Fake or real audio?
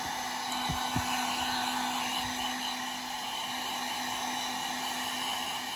real